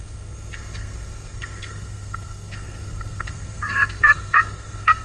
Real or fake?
fake